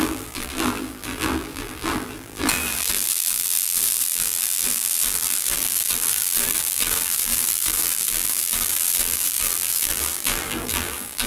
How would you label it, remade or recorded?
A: remade